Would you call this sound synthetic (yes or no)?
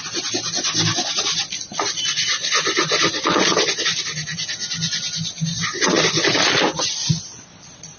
no